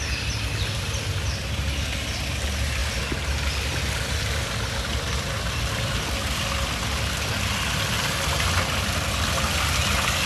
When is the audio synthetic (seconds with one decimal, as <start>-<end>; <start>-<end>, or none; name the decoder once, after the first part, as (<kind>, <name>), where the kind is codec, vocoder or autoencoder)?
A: none